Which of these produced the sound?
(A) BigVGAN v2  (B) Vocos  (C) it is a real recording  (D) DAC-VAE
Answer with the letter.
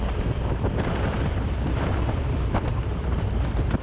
A